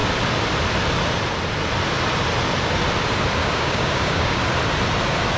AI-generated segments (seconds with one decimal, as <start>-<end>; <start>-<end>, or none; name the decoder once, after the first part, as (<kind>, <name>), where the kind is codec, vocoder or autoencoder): 3.4-4.4 (codec, DAC)